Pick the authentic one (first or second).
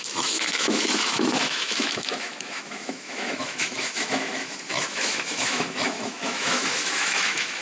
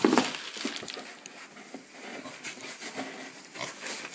second